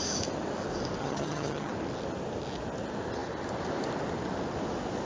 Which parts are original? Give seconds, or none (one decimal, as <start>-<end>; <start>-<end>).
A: 0.0-1.0; 1.7-5.1